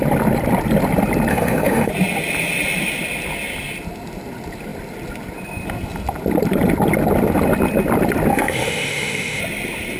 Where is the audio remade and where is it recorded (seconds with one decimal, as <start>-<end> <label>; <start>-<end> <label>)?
0.0-1.3 recorded; 1.3-1.9 remade; 1.9-8.3 recorded; 8.3-9.4 remade; 9.4-10.0 recorded